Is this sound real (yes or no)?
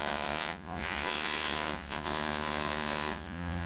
no